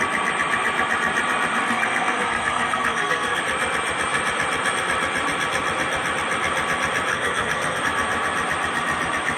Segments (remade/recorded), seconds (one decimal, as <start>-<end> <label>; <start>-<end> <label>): 0.0-1.6 recorded; 1.6-3.4 remade; 3.4-7.1 recorded; 7.1-7.8 remade; 7.8-9.4 recorded